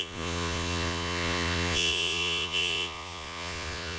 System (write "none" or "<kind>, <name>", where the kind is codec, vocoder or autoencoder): vocoder, Vocos